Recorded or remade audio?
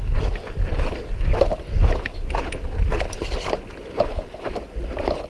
recorded